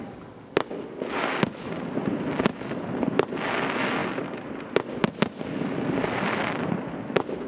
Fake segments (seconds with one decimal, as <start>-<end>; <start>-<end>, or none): none